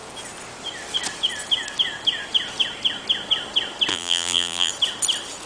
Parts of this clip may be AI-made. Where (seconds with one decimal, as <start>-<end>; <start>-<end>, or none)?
3.9-4.7